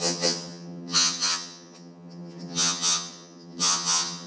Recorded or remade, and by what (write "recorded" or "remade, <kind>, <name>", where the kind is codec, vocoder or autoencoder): remade, vocoder, HiFi-GAN